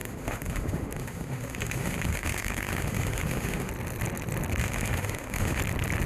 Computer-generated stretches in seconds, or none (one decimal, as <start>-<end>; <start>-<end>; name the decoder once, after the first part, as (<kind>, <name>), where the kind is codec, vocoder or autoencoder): 0.0-3.7 (autoencoder, DAC-VAE); 4.6-5.6